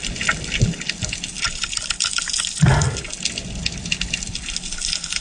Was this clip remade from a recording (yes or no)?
no